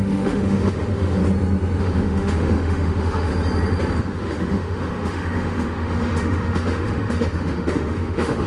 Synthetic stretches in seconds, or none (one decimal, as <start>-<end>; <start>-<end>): 0.0-1.2; 1.8-3.3; 4.0-8.5